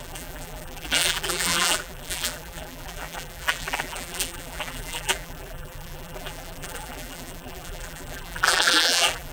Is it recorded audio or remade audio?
remade